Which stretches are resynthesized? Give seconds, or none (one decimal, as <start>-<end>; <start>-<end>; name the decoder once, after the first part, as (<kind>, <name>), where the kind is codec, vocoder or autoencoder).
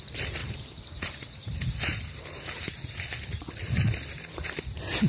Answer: 0.4-3.5 (vocoder, BigVGAN v2)